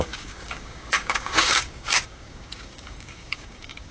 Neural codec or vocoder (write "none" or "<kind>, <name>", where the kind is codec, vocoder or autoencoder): codec, DAC